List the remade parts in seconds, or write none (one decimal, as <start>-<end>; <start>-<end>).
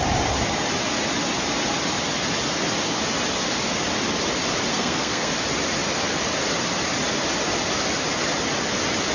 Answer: 4.7-5.3